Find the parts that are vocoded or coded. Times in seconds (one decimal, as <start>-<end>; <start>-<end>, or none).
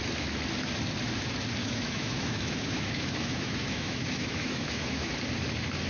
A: 1.6-5.1